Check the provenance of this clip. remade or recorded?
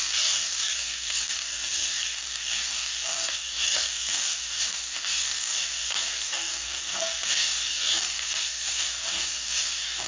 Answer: remade